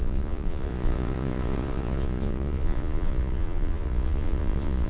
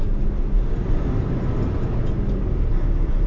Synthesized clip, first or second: first